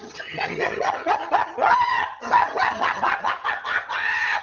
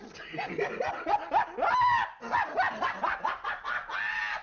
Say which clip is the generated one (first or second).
first